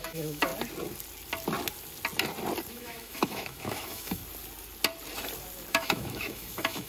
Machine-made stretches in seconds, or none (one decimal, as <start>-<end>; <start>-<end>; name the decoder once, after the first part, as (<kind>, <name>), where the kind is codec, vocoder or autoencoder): 0.0-0.5 (autoencoder, DAC-VAE); 2.7-4.2; 5.7-6.9